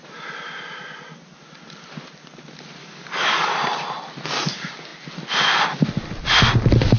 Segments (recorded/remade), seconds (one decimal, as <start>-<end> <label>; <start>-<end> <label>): 0.0-2.8 recorded; 2.8-3.5 remade; 3.5-7.0 recorded